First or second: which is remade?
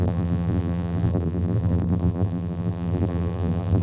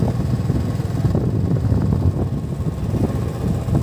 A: first